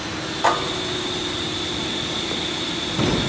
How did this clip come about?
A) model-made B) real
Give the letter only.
B